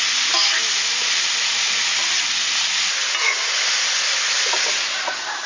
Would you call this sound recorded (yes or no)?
yes